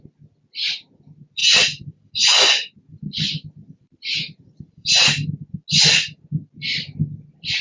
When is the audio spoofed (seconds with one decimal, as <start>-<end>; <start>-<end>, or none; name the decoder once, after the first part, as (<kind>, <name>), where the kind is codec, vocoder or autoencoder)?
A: 1.4-2.1 (vocoder, BigVGAN v2); 2.9-5.0